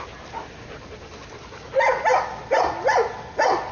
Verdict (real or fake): real